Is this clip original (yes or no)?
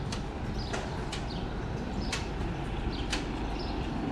no